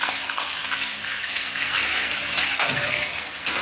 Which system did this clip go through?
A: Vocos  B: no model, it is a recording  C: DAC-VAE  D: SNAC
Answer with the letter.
D